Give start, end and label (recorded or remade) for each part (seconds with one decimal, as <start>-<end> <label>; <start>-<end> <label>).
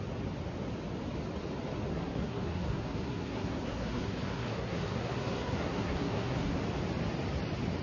0.0-1.9 recorded; 1.9-6.6 remade; 6.6-7.8 recorded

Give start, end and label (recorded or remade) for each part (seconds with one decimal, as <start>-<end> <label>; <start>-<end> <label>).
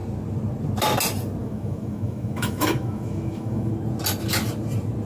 0.0-1.4 recorded; 1.4-3.7 remade; 3.7-5.1 recorded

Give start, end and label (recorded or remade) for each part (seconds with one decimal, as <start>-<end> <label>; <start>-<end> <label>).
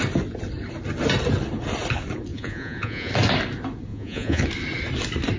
0.0-2.3 recorded; 2.3-3.1 remade; 3.1-3.9 recorded; 3.9-4.4 remade; 4.4-5.4 recorded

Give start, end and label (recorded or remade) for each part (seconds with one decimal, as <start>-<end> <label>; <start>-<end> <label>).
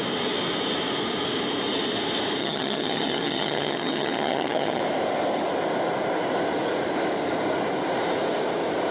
0.0-2.4 recorded; 2.4-4.8 remade; 4.8-8.9 recorded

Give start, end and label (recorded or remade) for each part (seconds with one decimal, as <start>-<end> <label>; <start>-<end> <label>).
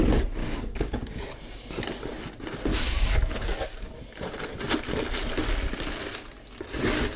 0.0-0.4 recorded; 0.4-1.0 remade; 1.0-2.7 recorded; 2.7-3.9 remade; 3.9-7.2 recorded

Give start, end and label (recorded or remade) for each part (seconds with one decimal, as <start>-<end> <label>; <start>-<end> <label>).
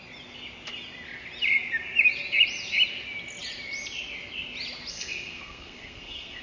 0.0-4.9 recorded; 4.9-6.4 remade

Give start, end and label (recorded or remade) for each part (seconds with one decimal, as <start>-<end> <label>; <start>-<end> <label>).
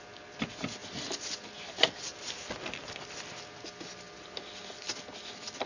0.0-5.7 recorded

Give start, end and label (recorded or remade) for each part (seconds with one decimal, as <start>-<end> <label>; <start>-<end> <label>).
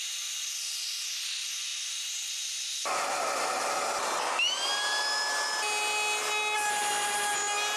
0.0-7.8 recorded